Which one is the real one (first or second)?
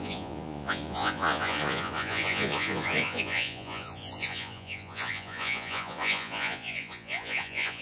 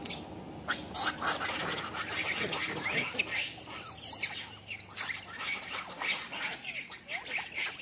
second